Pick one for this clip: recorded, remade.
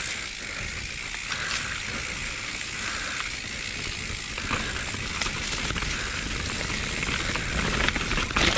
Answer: recorded